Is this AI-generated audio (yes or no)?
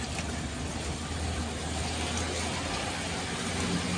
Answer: no